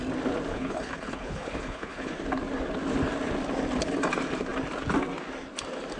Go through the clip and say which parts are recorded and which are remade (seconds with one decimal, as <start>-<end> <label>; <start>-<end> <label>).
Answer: 0.0-0.5 recorded; 0.5-2.1 remade; 2.1-6.0 recorded

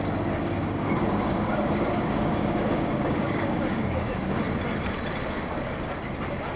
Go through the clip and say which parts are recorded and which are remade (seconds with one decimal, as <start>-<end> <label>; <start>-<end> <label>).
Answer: 0.0-0.4 recorded; 0.4-4.4 remade; 4.4-6.6 recorded

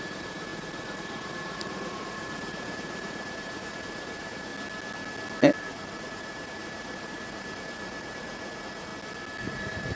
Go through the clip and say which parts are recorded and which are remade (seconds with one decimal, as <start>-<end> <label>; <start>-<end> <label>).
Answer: 0.0-4.5 remade; 4.5-5.6 recorded; 5.6-8.9 remade; 8.9-9.4 recorded; 9.4-10.0 remade

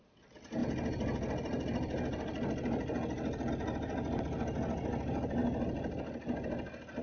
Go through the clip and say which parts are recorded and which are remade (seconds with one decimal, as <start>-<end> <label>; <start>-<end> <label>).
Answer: 0.0-7.0 recorded

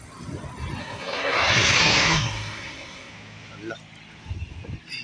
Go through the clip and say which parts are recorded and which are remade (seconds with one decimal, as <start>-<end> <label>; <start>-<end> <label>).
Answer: 0.0-0.8 recorded; 0.8-3.1 remade; 3.1-5.0 recorded

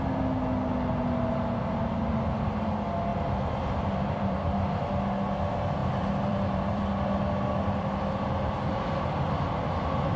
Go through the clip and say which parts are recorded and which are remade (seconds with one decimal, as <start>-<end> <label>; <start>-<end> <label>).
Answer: 0.0-3.1 recorded; 3.1-4.8 remade; 4.8-5.8 recorded; 5.8-6.8 remade; 6.8-10.2 recorded

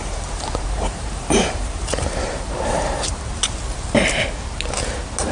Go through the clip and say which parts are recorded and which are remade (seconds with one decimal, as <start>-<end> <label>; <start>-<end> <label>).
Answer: 0.0-3.2 remade; 3.2-5.3 recorded

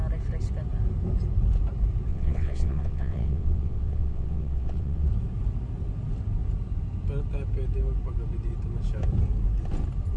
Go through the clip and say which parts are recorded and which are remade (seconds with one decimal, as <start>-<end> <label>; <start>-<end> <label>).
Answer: 0.0-2.1 recorded; 2.1-5.1 remade; 5.1-10.2 recorded